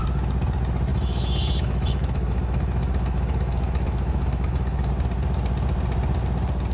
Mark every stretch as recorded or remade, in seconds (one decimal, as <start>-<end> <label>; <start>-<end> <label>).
0.0-0.9 recorded; 0.9-4.9 remade; 4.9-6.7 recorded